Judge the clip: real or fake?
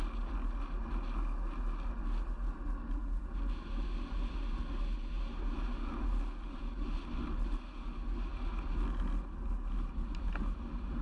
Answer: real